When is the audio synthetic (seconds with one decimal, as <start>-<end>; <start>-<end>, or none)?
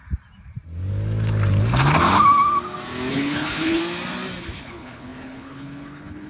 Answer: 3.1-3.8; 4.4-6.3